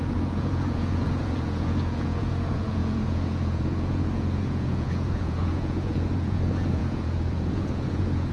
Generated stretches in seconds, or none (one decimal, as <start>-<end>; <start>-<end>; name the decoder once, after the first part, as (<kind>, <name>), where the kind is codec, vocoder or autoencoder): 0.0-8.3 (vocoder, Vocos)